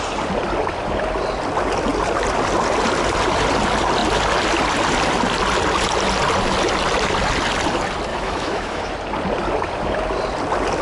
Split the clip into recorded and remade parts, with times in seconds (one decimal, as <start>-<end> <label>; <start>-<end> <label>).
0.0-8.1 recorded; 8.1-8.9 remade; 8.9-10.8 recorded